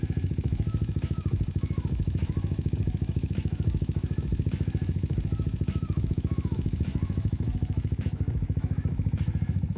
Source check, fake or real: fake